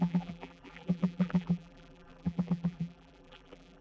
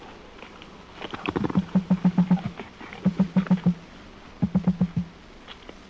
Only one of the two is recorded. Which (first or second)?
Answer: second